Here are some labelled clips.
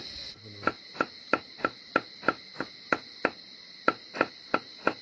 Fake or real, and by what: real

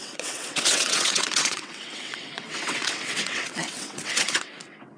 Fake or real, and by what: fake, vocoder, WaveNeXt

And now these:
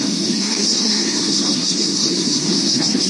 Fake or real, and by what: fake, codec, SNAC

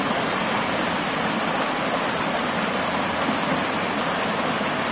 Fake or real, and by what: real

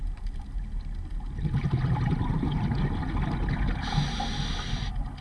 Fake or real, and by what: real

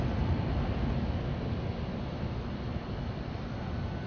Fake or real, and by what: real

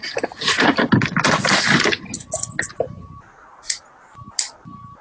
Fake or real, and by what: real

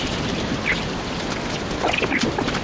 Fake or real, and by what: real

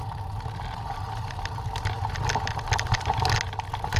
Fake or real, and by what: real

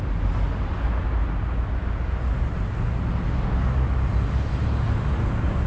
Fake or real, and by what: real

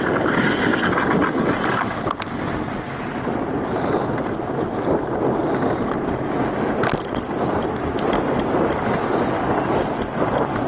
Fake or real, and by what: fake, vocoder, BigVGAN v2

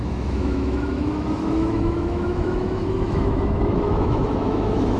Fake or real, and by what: fake, autoencoder, DAC-VAE